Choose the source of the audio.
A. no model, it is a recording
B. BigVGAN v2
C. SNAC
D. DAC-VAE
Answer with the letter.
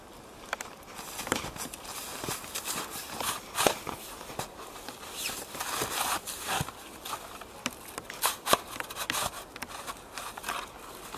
A